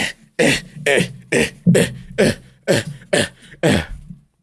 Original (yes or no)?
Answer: yes